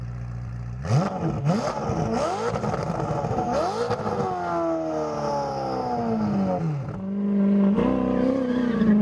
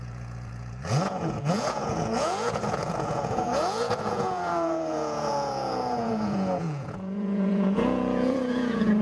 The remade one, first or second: second